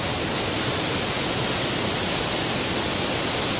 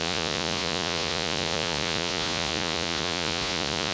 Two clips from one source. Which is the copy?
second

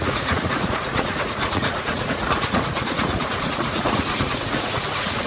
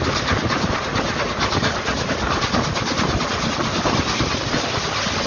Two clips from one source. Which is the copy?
first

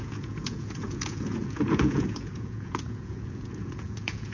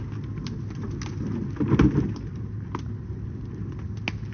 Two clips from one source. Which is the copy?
first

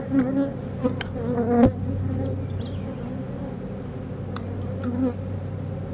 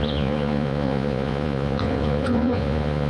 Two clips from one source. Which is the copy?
second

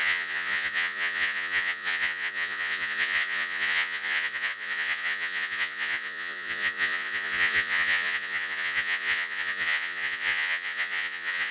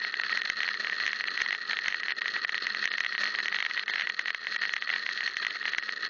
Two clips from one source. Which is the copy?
first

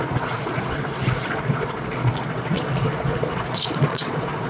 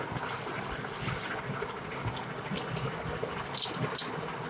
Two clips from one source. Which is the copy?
first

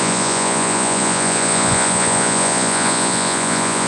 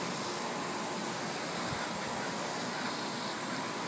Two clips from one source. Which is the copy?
first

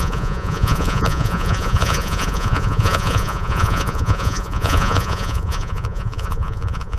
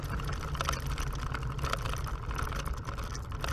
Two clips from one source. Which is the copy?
first